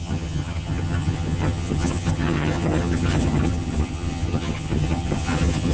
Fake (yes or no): yes